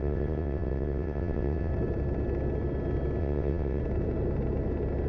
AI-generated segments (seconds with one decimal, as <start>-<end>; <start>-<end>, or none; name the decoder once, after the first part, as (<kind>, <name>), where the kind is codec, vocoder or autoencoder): 0.0-1.7 (vocoder, WaveNeXt); 3.2-3.8